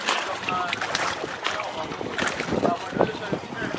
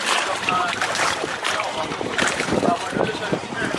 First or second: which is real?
first